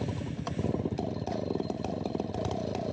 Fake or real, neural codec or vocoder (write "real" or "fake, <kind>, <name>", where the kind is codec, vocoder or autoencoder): real